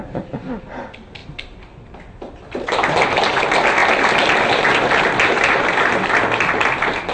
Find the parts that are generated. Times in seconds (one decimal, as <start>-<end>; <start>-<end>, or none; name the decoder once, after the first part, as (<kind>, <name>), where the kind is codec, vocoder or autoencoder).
none